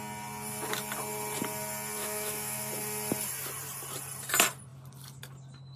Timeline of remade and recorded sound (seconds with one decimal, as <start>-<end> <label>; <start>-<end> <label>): 0.0-2.0 recorded; 2.0-2.7 remade; 2.7-5.8 recorded